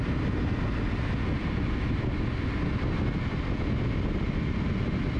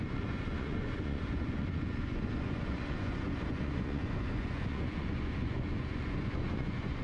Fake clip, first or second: second